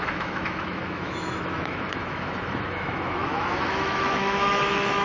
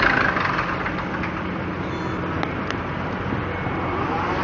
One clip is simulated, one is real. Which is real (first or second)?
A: second